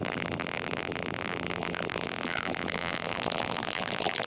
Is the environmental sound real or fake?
fake